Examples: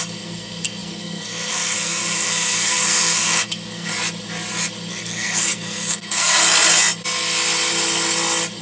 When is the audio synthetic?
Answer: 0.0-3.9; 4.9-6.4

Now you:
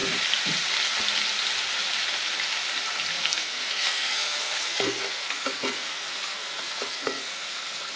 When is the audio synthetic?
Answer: 3.1-8.0

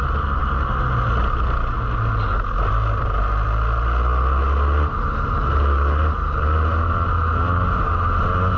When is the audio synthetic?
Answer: none

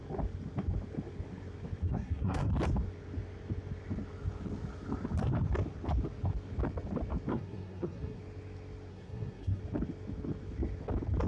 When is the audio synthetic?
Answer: 1.8-2.5; 7.3-8.2; 8.9-9.6

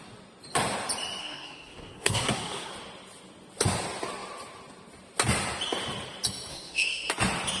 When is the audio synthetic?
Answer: 1.2-2.7; 6.5-7.1

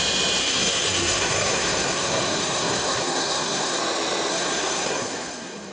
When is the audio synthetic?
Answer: 0.4-3.8; 4.3-5.7

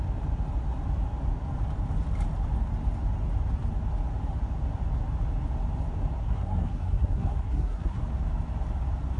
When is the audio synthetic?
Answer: 6.2-8.0